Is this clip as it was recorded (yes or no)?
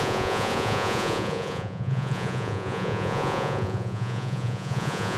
no